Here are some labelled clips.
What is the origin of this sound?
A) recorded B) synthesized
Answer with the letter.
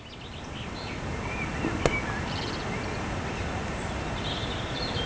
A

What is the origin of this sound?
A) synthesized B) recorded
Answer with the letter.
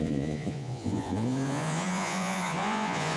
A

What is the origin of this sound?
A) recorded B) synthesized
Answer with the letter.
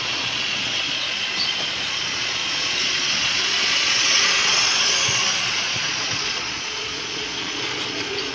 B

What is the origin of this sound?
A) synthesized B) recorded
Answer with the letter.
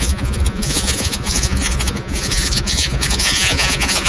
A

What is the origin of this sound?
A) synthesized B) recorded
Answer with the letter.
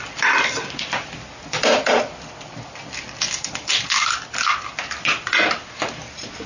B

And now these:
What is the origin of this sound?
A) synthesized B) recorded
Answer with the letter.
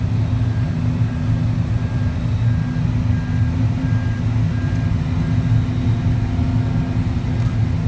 B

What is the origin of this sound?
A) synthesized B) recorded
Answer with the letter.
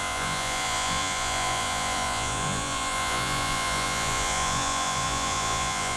A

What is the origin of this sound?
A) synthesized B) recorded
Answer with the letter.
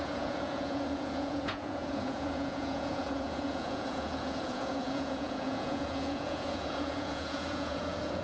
A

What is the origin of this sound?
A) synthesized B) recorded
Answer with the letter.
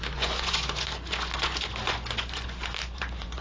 A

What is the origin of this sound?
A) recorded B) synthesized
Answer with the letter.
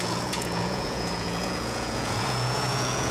B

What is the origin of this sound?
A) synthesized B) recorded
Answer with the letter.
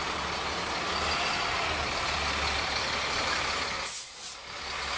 B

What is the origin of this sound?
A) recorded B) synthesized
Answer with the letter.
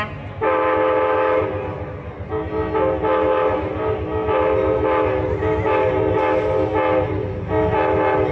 A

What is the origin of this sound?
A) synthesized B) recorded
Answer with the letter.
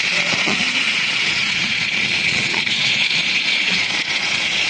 A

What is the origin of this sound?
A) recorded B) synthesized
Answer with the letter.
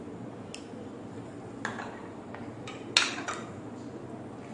A